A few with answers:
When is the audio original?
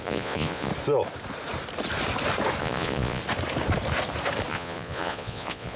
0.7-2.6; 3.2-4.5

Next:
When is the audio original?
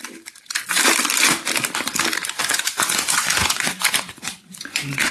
0.0-2.4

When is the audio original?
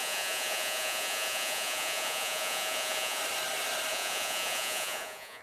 3.2-3.9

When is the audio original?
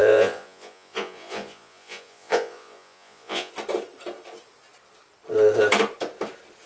3.5-6.7